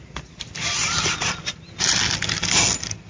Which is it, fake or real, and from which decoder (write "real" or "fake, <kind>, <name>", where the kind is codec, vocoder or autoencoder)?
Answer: real